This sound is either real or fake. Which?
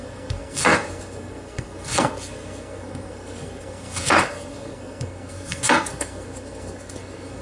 fake